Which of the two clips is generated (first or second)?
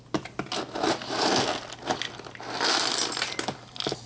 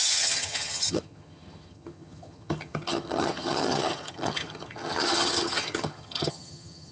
second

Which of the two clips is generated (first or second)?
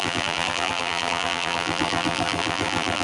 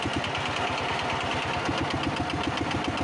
first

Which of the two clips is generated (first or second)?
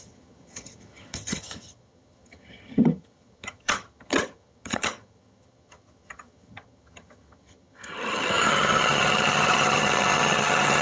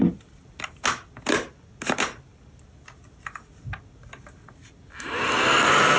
first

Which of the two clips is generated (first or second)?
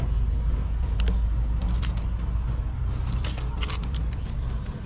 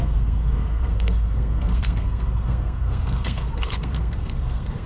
second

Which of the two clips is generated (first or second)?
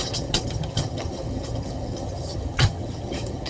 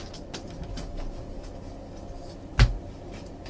first